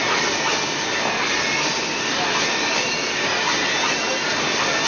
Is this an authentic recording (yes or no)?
yes